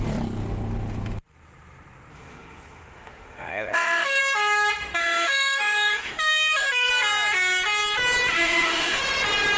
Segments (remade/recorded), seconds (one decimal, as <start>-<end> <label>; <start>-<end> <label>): 0.0-2.1 recorded; 2.1-4.2 remade; 4.2-5.0 recorded; 5.0-6.9 remade; 6.9-8.3 recorded; 8.3-9.0 remade; 9.0-9.6 recorded